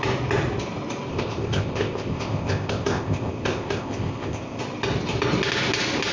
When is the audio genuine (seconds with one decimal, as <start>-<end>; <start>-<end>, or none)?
0.0-1.1; 4.6-6.1